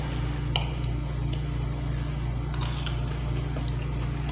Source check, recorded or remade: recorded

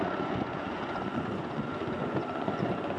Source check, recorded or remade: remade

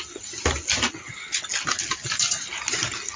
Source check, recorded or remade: recorded